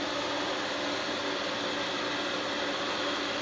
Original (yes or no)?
yes